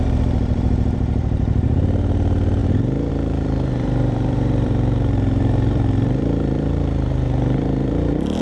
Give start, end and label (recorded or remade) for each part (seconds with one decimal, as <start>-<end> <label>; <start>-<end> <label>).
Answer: 0.0-2.6 remade; 2.6-3.1 recorded; 3.1-8.4 remade